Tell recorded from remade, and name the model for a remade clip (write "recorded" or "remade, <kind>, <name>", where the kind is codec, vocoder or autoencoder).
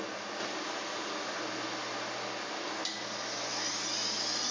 recorded